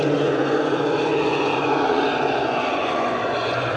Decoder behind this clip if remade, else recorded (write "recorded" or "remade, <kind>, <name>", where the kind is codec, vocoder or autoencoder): remade, vocoder, Vocos